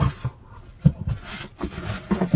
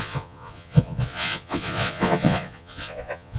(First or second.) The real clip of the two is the first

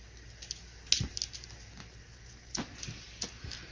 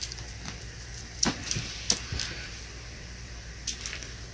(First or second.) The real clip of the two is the first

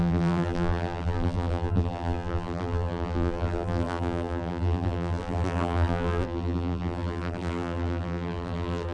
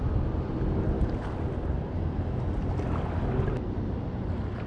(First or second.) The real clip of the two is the second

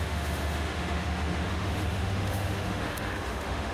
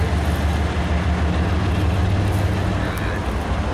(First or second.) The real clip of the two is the second